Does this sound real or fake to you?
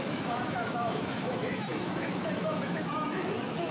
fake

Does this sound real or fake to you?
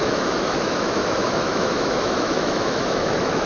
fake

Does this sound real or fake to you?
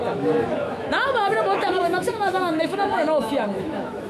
fake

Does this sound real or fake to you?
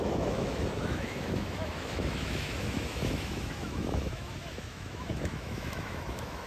fake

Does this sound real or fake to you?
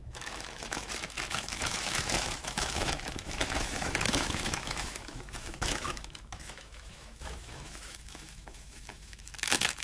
fake